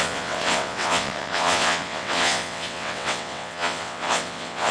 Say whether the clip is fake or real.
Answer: fake